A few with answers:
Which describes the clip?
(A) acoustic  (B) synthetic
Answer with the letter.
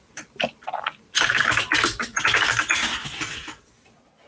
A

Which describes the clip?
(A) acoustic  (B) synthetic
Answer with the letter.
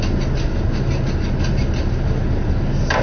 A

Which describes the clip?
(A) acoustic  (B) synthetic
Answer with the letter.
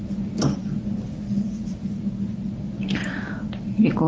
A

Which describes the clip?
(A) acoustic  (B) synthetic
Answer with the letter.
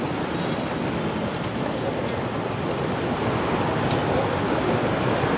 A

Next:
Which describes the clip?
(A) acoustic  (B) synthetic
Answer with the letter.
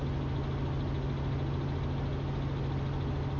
A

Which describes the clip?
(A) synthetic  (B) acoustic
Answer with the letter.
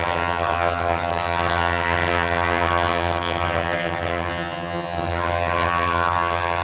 A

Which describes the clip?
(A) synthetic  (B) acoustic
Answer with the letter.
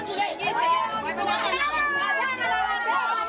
B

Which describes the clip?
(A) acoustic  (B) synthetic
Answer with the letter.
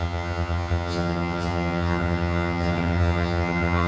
B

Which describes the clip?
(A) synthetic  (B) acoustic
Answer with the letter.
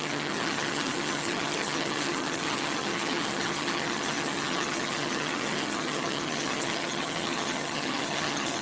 A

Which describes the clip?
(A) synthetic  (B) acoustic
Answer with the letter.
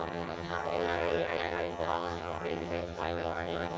A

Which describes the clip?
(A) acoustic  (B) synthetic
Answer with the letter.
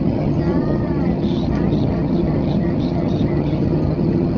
B